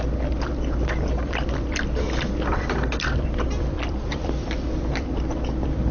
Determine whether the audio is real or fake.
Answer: fake